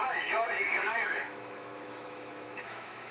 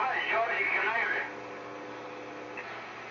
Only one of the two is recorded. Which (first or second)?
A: second